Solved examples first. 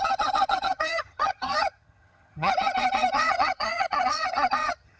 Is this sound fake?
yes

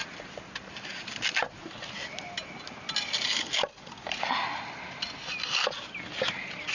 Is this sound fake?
no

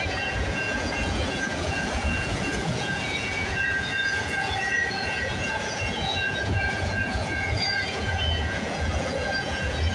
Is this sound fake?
yes